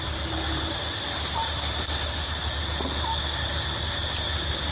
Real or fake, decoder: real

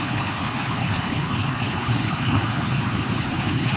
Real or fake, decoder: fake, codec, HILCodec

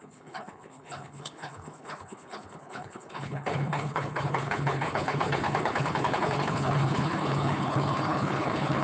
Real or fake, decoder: fake, codec, HILCodec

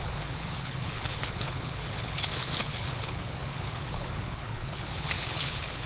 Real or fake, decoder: fake, codec, HILCodec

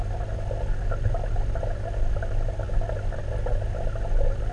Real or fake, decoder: real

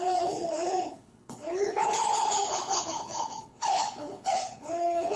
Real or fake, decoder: fake, codec, HILCodec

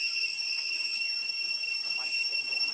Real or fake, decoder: real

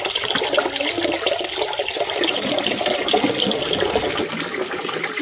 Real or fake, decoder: real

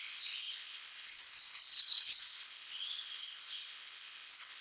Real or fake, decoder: fake, codec, HILCodec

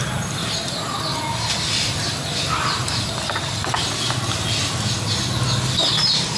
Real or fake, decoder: real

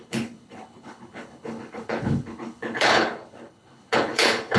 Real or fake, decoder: fake, codec, HILCodec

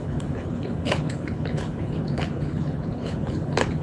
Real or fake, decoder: fake, codec, HILCodec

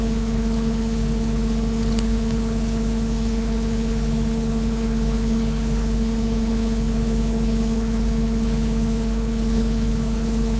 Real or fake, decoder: fake, codec, HILCodec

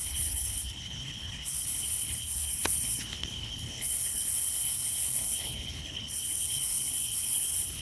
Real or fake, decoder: fake, codec, HILCodec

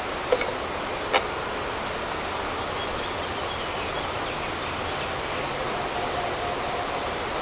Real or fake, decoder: real